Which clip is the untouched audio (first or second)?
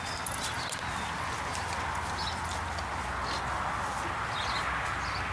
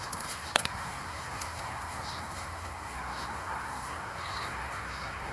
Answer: first